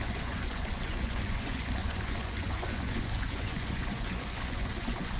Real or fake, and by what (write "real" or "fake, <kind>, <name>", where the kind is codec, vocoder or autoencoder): fake, vocoder, Vocos